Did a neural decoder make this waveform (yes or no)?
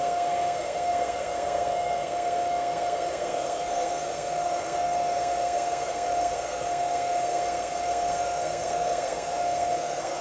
yes